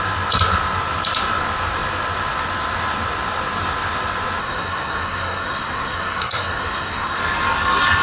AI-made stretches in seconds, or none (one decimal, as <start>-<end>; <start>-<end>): 4.4-7.2